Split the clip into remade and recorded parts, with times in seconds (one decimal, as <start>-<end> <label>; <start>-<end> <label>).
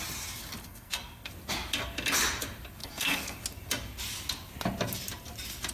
0.0-0.6 recorded; 0.6-1.3 remade; 1.3-2.8 recorded; 2.8-3.4 remade; 3.4-5.7 recorded